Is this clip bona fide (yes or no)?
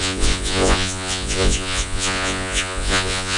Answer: no